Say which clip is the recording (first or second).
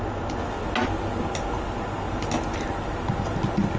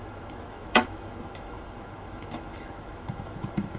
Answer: first